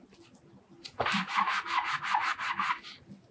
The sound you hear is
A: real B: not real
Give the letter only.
A